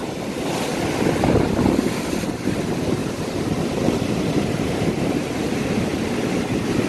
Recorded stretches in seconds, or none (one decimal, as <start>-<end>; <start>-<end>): 0.0-3.0; 5.7-6.9